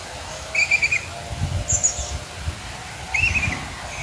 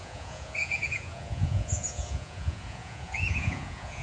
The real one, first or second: first